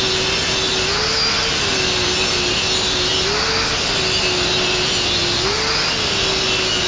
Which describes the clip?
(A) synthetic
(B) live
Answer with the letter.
B